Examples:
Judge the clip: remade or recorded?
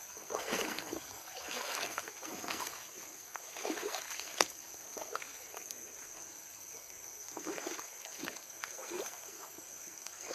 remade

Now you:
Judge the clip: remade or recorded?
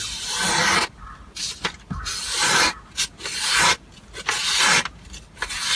recorded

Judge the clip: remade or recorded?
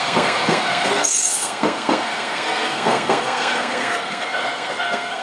remade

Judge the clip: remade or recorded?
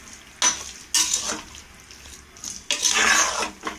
recorded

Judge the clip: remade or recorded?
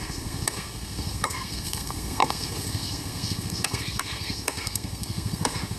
remade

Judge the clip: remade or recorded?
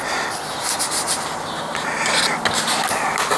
recorded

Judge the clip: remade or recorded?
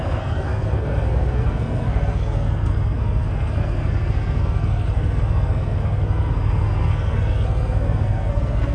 remade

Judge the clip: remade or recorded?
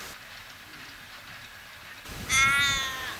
recorded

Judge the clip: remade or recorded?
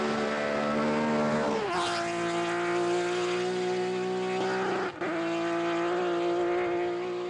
recorded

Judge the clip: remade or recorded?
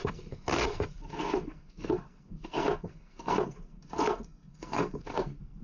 remade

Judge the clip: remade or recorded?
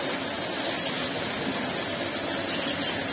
recorded